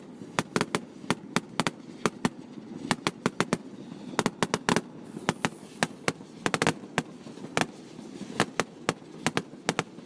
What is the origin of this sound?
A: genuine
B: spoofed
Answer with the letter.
A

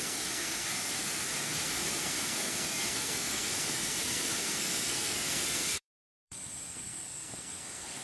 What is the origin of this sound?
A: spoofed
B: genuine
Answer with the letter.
A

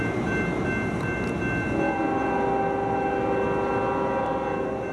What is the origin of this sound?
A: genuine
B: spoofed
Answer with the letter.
A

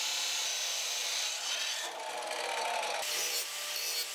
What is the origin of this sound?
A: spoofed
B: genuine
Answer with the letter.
B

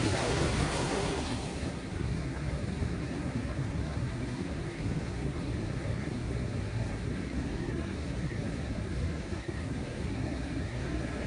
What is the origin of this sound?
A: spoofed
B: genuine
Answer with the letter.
A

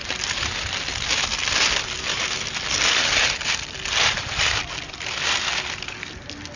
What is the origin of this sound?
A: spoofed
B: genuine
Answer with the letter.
B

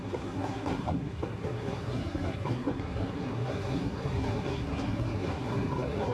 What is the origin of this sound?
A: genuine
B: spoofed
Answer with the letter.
B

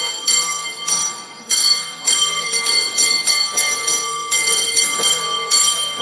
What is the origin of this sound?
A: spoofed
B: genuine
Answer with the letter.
A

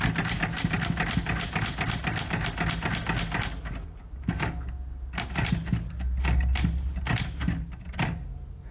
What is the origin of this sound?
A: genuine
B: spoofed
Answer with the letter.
A